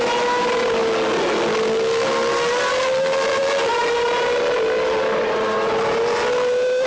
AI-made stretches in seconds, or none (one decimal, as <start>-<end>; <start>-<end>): none